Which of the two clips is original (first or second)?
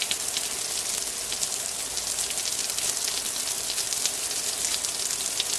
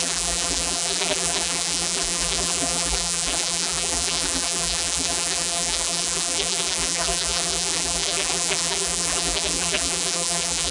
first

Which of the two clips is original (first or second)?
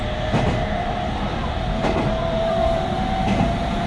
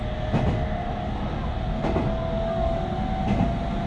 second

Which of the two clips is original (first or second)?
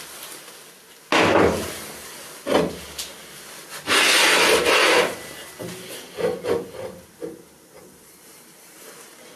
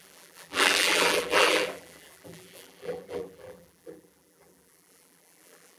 first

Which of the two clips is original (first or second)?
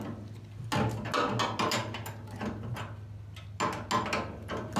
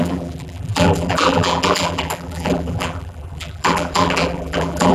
first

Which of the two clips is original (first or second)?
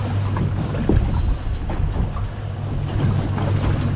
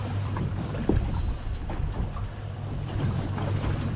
first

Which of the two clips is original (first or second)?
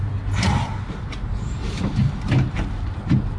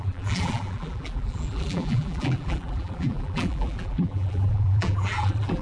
first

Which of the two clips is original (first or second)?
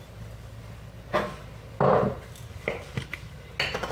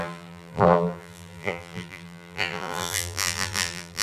first